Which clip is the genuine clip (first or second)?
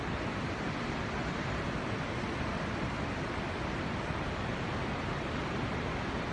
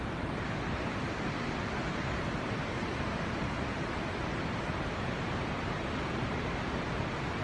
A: first